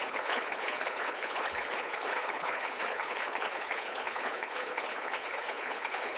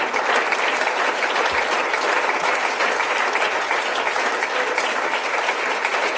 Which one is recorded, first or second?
second